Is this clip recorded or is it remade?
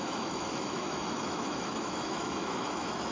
remade